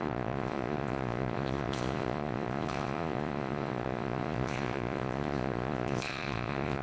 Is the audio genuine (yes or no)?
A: no